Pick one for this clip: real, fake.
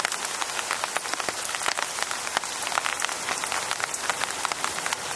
real